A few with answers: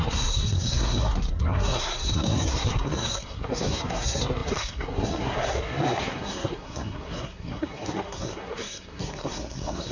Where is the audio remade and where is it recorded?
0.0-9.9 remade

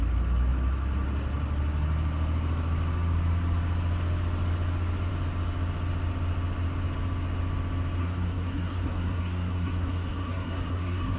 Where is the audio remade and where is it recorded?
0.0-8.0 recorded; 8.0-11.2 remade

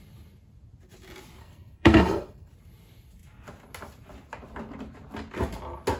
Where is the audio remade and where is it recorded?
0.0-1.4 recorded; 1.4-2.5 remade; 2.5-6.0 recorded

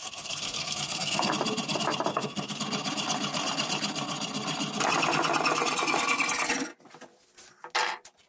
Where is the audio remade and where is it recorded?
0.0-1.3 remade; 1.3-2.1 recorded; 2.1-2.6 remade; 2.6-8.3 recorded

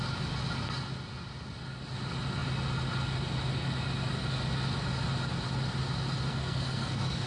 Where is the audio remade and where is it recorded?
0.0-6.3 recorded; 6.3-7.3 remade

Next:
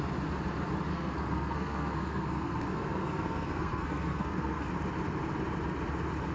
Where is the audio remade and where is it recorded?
0.0-0.9 recorded; 0.9-4.7 remade; 4.7-6.3 recorded